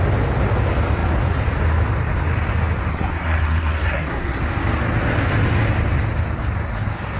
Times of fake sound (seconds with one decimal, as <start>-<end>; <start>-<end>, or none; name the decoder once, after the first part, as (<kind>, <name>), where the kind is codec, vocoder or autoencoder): 2.9-4.4 (codec, SNAC)